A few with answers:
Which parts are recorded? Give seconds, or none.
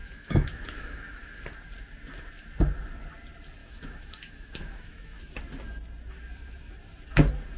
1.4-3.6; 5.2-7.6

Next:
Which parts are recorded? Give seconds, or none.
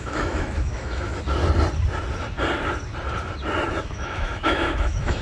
1.1-3.8